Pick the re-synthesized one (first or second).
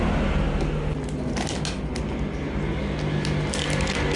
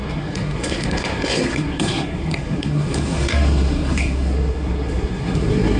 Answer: second